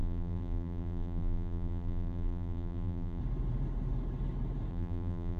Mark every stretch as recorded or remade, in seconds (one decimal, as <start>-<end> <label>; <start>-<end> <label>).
0.0-3.2 remade; 3.2-4.7 recorded; 4.7-5.4 remade